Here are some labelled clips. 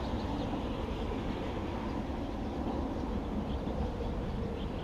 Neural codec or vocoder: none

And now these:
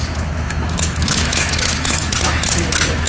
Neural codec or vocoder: autoencoder, DAC-VAE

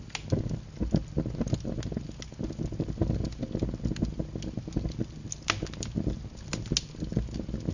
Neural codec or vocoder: none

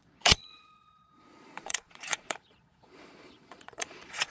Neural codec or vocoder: vocoder, Vocos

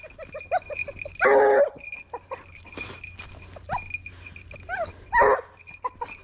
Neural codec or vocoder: none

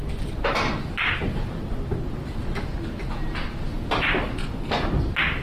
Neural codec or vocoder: none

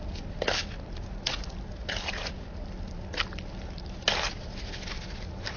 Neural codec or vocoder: none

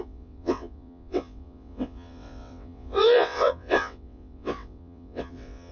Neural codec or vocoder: vocoder, WaveNeXt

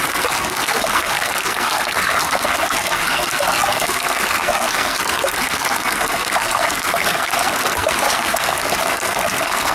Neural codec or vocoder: codec, SNAC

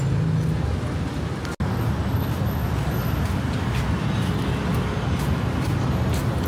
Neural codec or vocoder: none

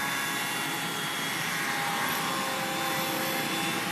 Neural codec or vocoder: none